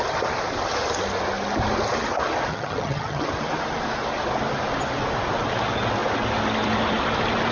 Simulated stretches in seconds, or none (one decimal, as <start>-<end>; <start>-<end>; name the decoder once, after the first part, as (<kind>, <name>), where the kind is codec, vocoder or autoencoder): 2.5-3.2 (vocoder, HiFi-GAN)